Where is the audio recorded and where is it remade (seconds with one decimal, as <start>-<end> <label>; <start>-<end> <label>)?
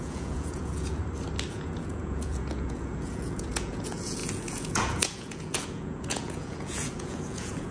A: 0.0-1.0 remade; 1.0-1.5 recorded; 1.5-7.7 remade